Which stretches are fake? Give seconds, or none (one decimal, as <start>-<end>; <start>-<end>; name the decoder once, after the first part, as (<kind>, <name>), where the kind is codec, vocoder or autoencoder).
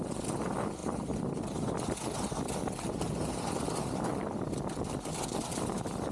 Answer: none